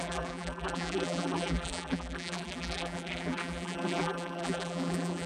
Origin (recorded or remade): remade